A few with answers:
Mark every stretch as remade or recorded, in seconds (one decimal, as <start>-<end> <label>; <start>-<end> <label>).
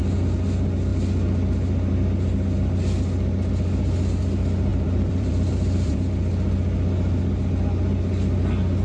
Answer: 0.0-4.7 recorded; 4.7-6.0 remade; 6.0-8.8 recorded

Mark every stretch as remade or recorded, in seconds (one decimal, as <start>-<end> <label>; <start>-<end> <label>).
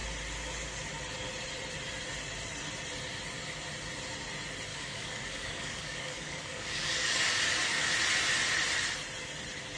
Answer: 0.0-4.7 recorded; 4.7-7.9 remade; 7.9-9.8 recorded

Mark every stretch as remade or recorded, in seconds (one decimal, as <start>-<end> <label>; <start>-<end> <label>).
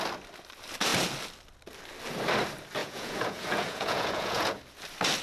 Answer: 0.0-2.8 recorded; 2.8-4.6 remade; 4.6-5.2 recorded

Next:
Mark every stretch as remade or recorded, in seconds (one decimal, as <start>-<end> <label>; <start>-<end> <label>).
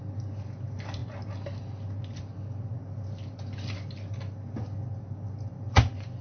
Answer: 0.0-6.2 recorded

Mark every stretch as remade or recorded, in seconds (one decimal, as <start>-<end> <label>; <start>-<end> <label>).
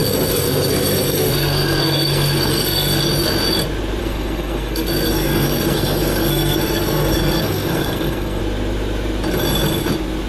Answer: 0.0-3.0 remade; 3.0-4.0 recorded; 4.0-8.4 remade; 8.4-10.3 recorded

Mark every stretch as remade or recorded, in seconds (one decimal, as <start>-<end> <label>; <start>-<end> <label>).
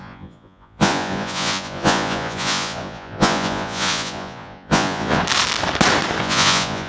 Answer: 0.0-5.2 remade; 5.2-6.2 recorded; 6.2-6.9 remade